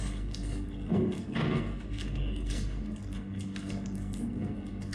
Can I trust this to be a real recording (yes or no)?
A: no